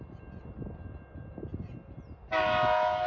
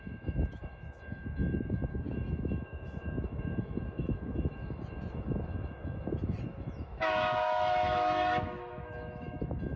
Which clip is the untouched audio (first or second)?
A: first